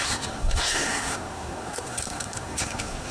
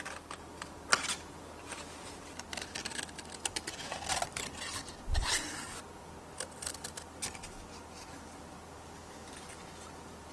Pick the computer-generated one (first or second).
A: first